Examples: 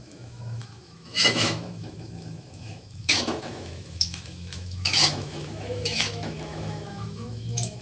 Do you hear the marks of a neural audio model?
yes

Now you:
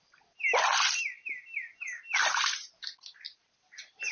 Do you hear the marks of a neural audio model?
no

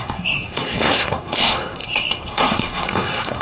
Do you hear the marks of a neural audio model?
yes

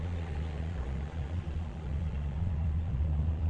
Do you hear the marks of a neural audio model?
yes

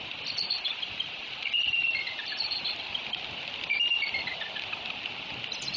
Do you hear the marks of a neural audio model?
no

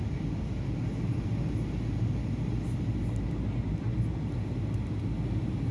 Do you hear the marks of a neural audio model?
no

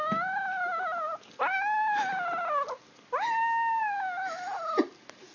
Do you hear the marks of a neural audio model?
no